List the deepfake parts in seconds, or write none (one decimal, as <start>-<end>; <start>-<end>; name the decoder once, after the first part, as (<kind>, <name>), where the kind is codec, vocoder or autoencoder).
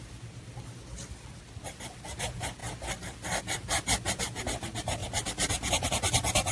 none